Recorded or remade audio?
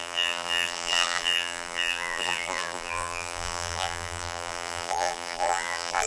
remade